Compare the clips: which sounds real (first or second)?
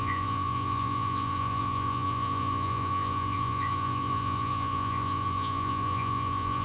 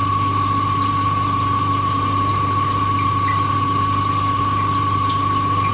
second